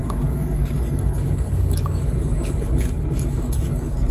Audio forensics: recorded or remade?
remade